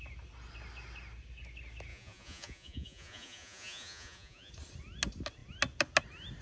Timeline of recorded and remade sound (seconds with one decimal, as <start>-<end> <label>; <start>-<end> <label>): 0.0-1.9 recorded; 1.9-4.5 remade; 4.5-6.4 recorded